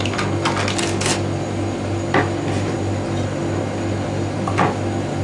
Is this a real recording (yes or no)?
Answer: yes